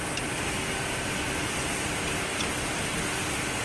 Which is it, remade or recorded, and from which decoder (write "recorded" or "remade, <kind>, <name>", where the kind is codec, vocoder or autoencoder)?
recorded